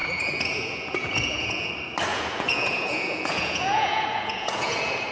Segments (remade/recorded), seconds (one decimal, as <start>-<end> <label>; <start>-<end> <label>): 0.0-1.7 remade; 1.7-2.1 recorded; 2.1-5.1 remade